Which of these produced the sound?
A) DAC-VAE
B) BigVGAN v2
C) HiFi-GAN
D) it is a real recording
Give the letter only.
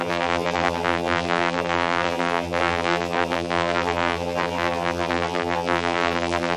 B